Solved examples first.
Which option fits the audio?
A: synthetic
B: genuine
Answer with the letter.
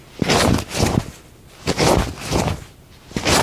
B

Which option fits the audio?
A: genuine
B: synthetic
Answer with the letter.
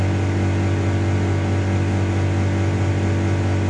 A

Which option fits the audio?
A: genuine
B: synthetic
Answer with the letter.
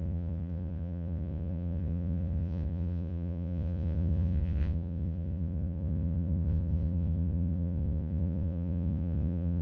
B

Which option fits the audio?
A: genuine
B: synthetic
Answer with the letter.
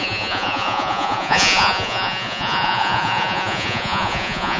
B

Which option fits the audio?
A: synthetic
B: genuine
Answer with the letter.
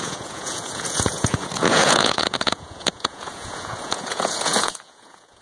A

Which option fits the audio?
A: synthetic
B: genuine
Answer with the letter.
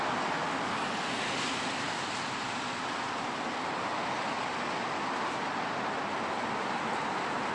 B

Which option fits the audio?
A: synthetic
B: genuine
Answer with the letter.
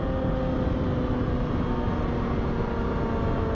B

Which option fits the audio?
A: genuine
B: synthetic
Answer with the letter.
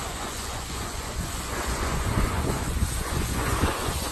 B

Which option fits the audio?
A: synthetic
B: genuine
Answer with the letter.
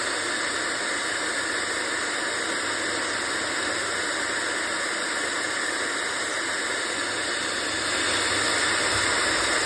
B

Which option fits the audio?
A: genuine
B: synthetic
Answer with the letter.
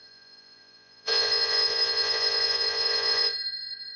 B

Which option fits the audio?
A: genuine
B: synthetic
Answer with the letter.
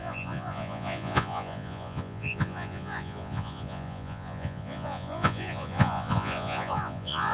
B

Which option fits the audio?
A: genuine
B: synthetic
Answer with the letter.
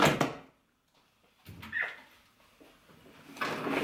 A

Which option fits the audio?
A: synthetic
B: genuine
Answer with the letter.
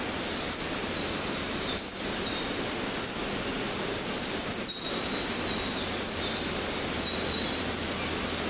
B